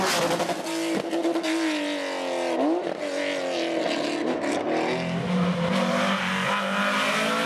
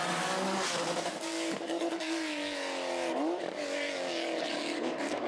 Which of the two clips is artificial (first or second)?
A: second